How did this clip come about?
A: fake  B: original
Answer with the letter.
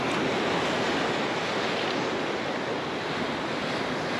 B